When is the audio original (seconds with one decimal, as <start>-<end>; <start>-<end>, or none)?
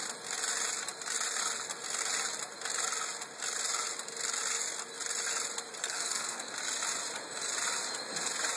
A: 0.0-5.8; 6.5-8.6